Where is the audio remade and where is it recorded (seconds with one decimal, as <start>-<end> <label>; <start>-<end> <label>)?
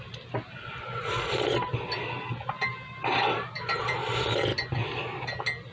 0.0-5.7 recorded